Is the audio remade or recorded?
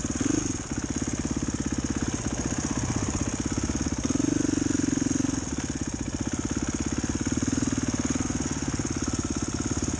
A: recorded